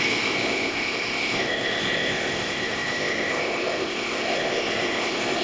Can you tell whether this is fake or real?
fake